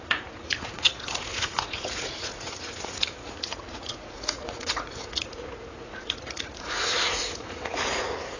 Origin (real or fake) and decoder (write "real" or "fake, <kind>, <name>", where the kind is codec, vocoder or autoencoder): fake, vocoder, Vocos